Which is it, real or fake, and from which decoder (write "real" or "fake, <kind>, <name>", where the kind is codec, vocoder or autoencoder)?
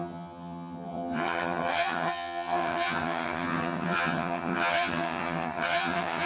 fake, vocoder, HiFi-GAN